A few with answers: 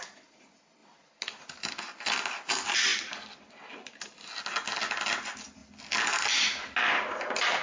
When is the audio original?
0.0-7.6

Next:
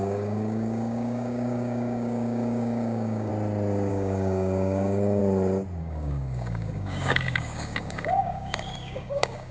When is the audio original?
3.3-3.9; 5.2-5.8

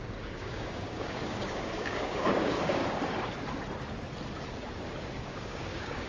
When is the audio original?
2.8-5.2

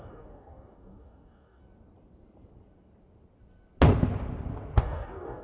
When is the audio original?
1.6-4.8